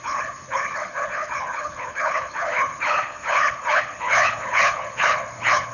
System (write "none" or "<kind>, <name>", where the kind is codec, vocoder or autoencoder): codec, HILCodec